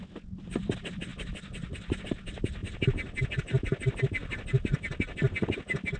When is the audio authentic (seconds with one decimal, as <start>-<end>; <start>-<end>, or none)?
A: 0.0-1.1; 1.8-6.0